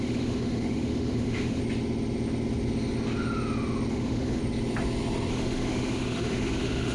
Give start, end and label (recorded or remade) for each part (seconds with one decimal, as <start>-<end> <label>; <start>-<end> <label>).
0.0-1.6 remade; 1.6-3.9 recorded; 3.9-4.4 remade; 4.4-5.3 recorded; 5.3-6.9 remade